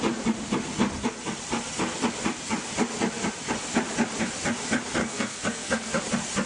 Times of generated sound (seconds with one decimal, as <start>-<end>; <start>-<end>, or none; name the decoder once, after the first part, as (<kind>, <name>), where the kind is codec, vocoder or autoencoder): 5.0-6.0 (codec, SNAC)